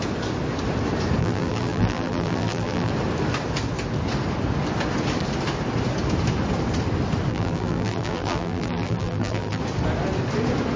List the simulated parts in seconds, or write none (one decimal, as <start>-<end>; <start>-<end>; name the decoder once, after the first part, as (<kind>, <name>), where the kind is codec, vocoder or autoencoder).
1.2-2.9 (vocoder, BigVGAN v2); 7.3-9.6